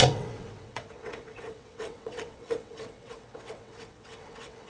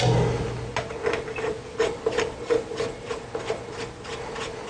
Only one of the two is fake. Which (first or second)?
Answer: first